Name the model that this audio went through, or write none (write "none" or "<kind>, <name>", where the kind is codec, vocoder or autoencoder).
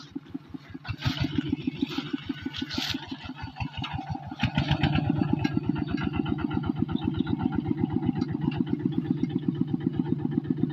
none